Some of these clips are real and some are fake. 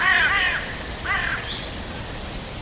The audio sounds real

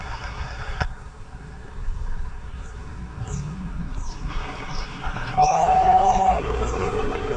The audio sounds fake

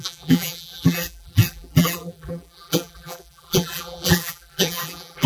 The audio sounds fake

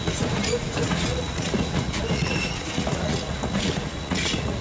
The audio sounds fake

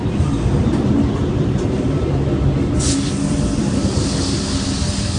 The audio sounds real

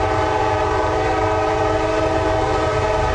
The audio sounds fake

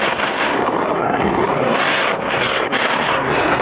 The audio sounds fake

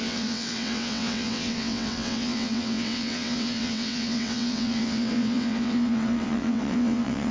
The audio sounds fake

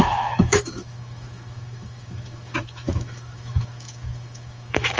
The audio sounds fake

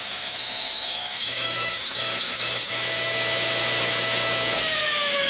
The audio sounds fake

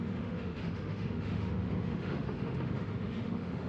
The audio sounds fake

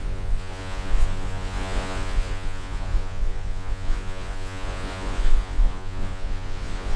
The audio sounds fake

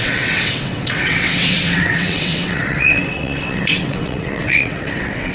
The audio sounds fake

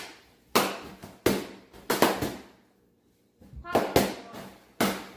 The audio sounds real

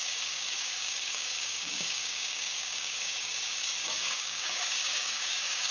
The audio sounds fake